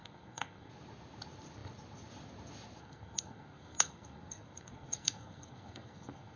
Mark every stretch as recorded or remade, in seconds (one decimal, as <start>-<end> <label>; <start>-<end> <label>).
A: 0.0-0.7 remade; 0.7-2.8 recorded; 2.8-6.4 remade